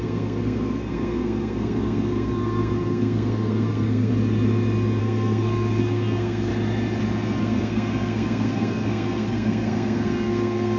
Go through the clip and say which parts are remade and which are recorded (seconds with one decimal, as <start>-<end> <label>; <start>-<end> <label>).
0.0-4.1 remade; 4.1-5.0 recorded; 5.0-6.5 remade; 6.5-7.4 recorded; 7.4-10.8 remade